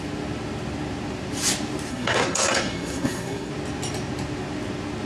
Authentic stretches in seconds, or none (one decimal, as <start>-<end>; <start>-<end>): 0.0-1.9; 3.5-5.1

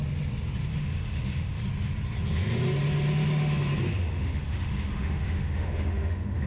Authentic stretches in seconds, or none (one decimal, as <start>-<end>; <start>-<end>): 0.0-0.7; 1.6-4.0